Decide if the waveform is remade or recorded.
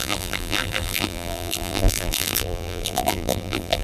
remade